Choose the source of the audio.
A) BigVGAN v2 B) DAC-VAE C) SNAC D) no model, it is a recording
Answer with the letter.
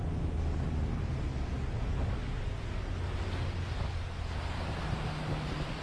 D